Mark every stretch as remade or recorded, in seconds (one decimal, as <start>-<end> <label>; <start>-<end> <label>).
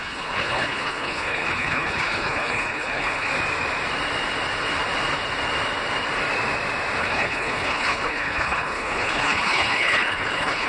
0.0-3.3 remade; 3.3-7.0 recorded; 7.0-10.7 remade